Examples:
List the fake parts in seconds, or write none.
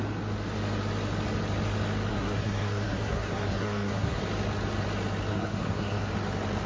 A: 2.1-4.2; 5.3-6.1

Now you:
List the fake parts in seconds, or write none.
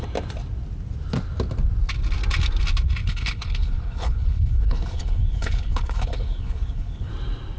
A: 3.0-7.1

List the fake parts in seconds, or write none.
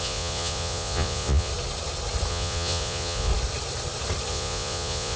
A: 0.0-1.5; 2.3-3.3; 4.3-5.2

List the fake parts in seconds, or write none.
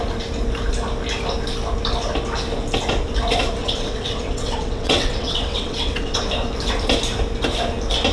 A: 3.6-6.2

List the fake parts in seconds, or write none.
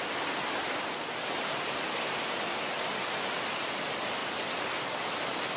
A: none